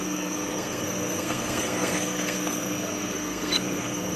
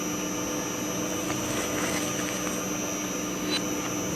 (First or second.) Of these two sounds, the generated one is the first